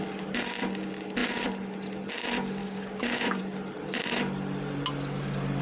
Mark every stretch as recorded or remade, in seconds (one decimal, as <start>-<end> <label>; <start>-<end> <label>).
0.0-2.6 recorded; 2.6-3.4 remade; 3.4-5.6 recorded